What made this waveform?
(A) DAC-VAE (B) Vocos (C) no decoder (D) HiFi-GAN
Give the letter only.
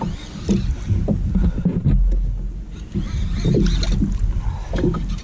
C